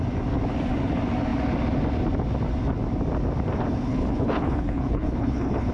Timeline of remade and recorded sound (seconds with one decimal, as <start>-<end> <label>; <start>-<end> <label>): 0.0-3.9 recorded; 3.9-5.7 remade